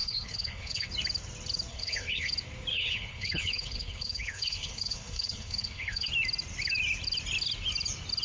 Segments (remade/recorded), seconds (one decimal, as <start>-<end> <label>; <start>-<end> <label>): 0.0-0.9 remade; 0.9-1.7 recorded; 1.7-2.3 remade; 2.3-2.7 recorded; 2.7-6.1 remade; 6.1-8.2 recorded